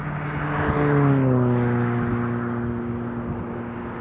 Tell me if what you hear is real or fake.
real